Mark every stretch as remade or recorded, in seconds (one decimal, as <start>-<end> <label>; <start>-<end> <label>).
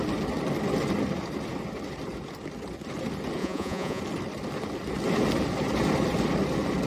0.0-3.4 recorded; 3.4-4.0 remade; 4.0-6.9 recorded